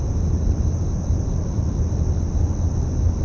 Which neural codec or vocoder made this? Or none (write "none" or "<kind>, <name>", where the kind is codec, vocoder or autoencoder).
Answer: none